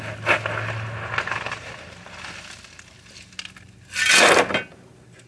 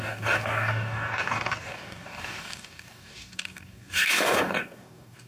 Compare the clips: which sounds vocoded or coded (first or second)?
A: second